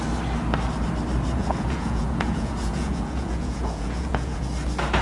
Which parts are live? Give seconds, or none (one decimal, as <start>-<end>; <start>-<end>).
0.0-1.4; 4.4-5.0